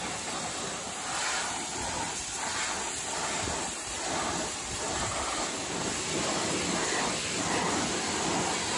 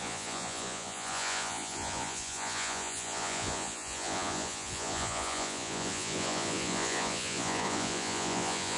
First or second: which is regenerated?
second